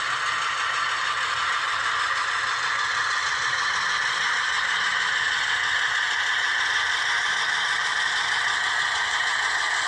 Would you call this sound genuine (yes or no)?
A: yes